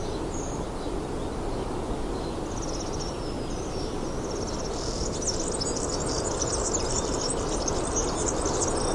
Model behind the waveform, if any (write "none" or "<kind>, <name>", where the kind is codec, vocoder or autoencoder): none